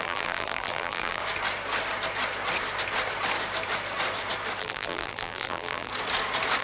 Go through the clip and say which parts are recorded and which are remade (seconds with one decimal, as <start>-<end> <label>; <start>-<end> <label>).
0.0-1.2 remade; 1.2-4.6 recorded; 4.6-5.9 remade; 5.9-6.6 recorded